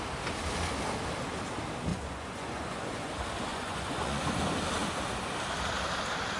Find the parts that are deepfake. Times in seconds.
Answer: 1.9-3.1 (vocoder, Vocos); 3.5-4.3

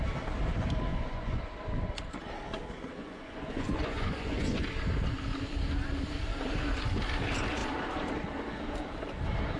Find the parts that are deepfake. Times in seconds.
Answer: 0.9-1.4 (vocoder, Vocos); 3.0-4.7

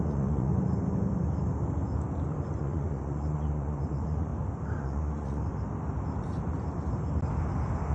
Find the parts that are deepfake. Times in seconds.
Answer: 0.0-0.5 (vocoder, Vocos); 2.6-4.3; 4.8-5.4

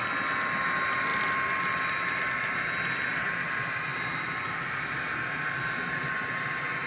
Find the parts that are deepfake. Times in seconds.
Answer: none

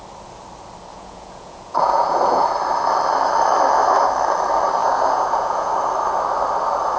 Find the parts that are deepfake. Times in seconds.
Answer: 0.9-2.5 (vocoder, Vocos); 4.8-5.7

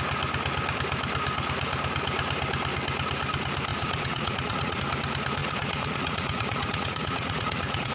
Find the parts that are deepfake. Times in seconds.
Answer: 3.7-4.8 (vocoder, Vocos); 5.4-7.9